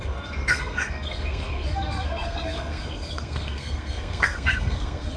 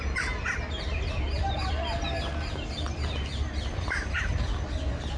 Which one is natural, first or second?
second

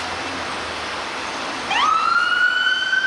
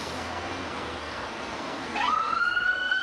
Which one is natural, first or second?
first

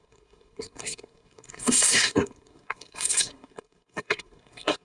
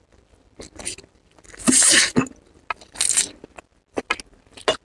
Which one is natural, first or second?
second